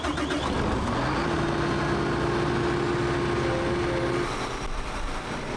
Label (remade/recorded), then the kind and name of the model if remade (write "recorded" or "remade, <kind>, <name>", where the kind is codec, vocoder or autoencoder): recorded